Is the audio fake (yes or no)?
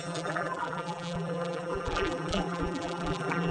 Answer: yes